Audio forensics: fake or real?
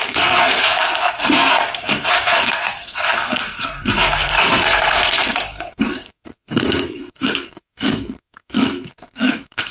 fake